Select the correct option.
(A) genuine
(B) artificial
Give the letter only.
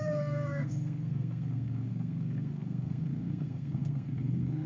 B